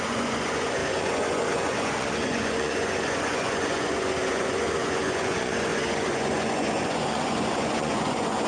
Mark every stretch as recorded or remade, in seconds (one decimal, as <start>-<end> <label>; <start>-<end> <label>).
0.0-8.5 remade